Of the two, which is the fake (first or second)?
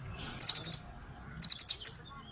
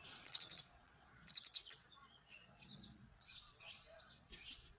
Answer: second